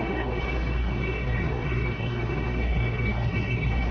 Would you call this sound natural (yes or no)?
no